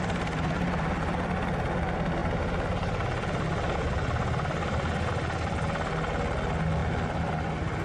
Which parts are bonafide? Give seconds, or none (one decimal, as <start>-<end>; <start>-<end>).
0.0-7.8

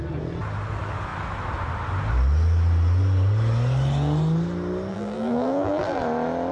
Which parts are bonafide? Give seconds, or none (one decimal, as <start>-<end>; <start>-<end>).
0.0-4.9; 6.0-6.5

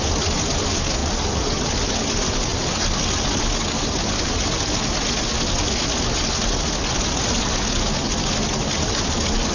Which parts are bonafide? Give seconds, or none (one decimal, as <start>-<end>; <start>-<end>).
0.0-1.0; 1.9-9.5

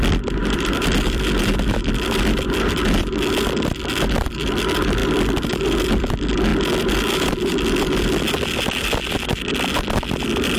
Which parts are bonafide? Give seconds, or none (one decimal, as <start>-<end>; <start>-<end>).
0.0-0.4; 3.0-10.6

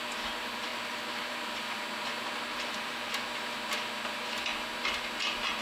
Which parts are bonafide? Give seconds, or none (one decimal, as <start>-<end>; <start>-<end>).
0.0-2.5; 3.1-5.6

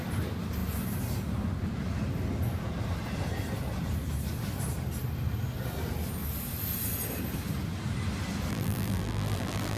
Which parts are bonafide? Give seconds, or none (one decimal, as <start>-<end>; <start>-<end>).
0.0-8.5

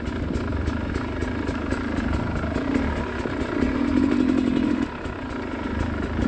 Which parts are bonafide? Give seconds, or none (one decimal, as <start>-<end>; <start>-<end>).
0.0-6.3